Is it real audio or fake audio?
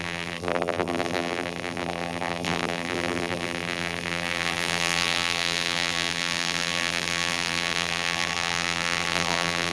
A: fake